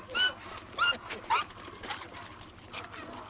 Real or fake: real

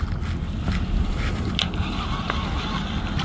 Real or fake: real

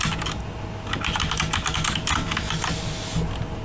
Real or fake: real